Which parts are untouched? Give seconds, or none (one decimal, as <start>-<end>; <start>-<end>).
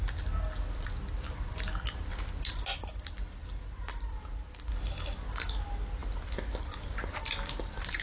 0.0-8.0